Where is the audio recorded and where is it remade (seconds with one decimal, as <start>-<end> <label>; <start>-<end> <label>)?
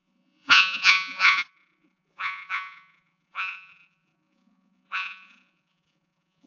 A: 0.0-6.5 remade